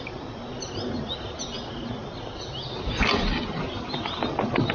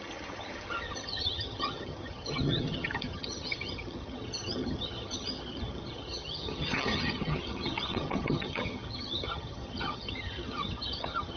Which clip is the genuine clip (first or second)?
first